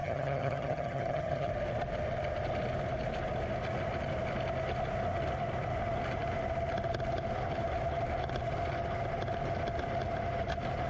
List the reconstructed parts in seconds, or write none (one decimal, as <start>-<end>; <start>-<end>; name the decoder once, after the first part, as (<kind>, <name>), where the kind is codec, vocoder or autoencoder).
0.0-1.5 (vocoder, HiFi-GAN)